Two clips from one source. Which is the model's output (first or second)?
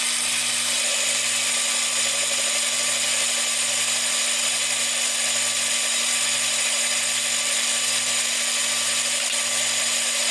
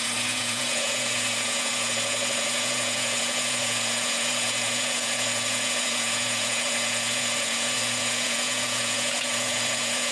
second